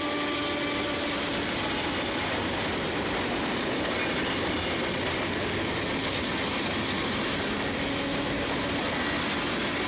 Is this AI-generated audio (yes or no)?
no